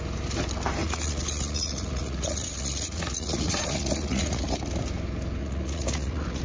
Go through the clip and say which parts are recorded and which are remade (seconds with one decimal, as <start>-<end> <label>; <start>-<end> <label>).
0.0-0.8 recorded; 0.8-4.6 remade; 4.6-5.4 recorded; 5.4-6.4 remade